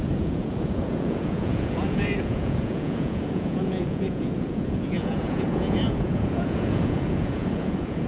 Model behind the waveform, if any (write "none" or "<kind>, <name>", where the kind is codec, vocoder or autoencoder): vocoder, Vocos